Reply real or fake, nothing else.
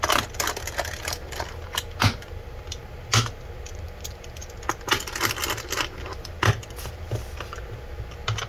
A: real